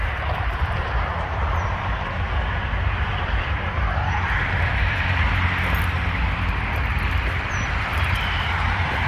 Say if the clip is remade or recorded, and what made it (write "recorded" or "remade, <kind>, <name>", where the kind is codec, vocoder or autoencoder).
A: remade, vocoder, BigVGAN v2